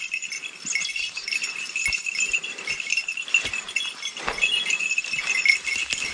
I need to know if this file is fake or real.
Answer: real